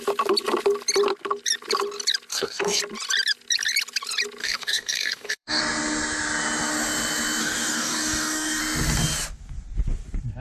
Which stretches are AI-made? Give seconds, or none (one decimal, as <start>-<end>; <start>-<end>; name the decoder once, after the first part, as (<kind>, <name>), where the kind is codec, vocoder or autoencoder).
2.3-2.8 (codec, DAC); 4.4-5.6; 7.4-8.6